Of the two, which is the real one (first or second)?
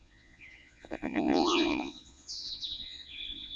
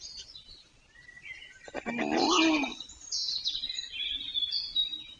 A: second